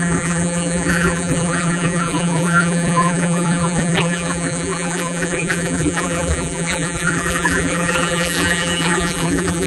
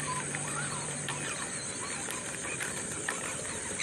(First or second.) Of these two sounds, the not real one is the first